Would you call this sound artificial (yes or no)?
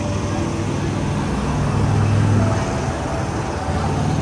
no